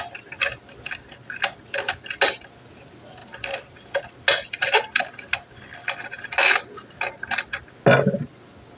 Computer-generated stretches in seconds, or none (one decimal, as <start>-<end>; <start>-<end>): 3.2-4.1